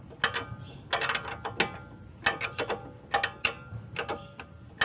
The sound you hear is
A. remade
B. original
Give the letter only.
B